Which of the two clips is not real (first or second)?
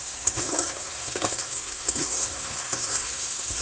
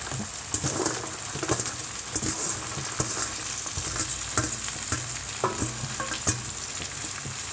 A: first